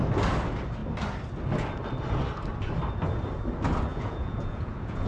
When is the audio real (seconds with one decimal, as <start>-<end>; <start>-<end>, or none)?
0.0-3.9